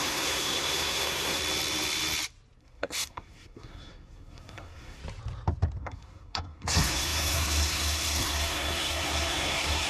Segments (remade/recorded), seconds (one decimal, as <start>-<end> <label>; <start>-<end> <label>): 0.0-1.4 remade; 1.4-2.6 recorded; 2.6-5.0 remade; 5.0-5.8 recorded; 5.8-9.9 remade